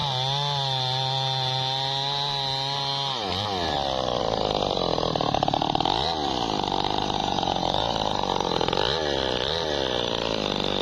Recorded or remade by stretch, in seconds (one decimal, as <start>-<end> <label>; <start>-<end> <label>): 0.0-7.2 recorded; 7.2-7.9 remade; 7.9-10.8 recorded